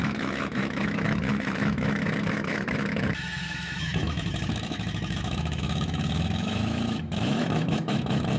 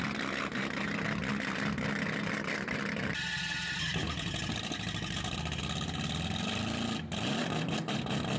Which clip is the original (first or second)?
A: second